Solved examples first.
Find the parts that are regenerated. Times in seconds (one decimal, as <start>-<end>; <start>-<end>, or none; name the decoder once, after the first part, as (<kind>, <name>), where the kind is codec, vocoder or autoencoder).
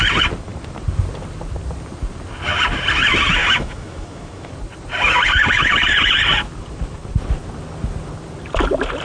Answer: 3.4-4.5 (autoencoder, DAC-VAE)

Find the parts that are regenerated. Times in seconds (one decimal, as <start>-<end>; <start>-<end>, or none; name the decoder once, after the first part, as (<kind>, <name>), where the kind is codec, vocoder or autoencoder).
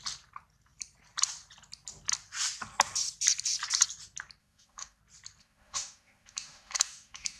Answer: 4.4-5.0 (autoencoder, DAC-VAE); 5.4-7.4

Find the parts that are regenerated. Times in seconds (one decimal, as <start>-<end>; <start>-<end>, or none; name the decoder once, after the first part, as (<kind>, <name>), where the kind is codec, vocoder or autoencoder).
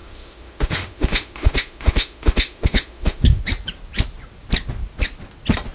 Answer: 0.0-3.4 (autoencoder, DAC-VAE)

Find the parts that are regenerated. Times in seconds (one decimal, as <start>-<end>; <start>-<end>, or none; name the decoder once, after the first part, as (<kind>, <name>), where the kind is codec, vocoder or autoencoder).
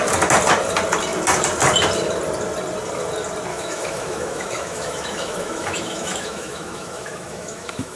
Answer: 3.5-8.0 (autoencoder, DAC-VAE)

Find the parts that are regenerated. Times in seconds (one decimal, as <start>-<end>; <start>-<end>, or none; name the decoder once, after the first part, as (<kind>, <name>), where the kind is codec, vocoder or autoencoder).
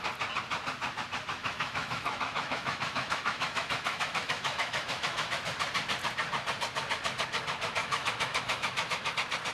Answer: 1.4-5.3 (autoencoder, DAC-VAE); 7.8-9.1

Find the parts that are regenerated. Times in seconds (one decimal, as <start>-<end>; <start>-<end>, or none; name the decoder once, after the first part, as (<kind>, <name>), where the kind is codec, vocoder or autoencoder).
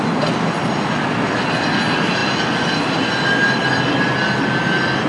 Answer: none